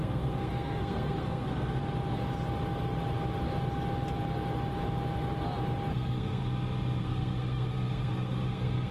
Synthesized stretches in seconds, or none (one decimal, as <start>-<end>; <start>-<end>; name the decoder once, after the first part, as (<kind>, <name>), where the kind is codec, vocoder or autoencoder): 0.0-1.8 (codec, SNAC); 5.9-6.4; 7.0-8.9